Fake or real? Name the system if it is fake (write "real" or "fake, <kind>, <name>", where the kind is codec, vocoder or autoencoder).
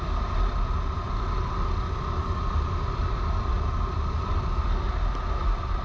real